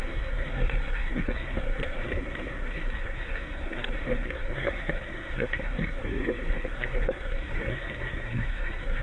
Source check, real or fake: fake